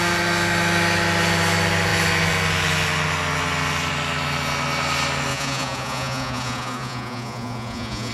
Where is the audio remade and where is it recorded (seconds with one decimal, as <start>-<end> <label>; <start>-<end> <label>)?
0.0-5.3 recorded; 5.3-8.1 remade